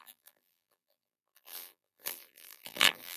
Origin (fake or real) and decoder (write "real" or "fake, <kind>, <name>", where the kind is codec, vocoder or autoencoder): fake, vocoder, BigVGAN v2